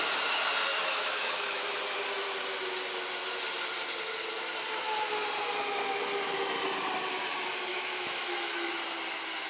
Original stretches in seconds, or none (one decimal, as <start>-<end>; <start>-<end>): 0.0-0.7; 1.8-7.7; 8.7-9.5